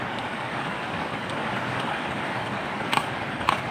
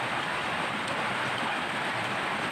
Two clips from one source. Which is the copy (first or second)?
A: first